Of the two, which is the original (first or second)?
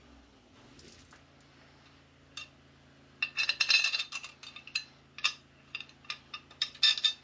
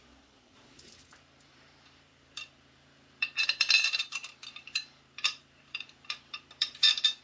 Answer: first